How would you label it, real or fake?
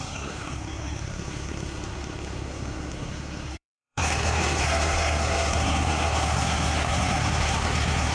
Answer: fake